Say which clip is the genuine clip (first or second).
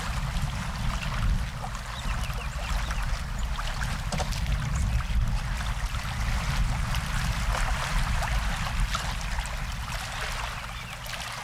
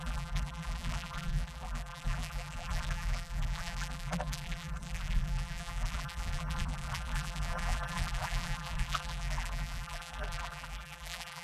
first